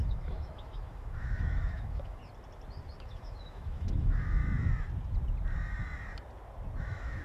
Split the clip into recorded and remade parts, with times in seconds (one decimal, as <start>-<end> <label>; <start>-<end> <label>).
0.0-2.2 remade; 2.2-3.0 recorded; 3.0-4.4 remade; 4.4-6.8 recorded; 6.8-7.2 remade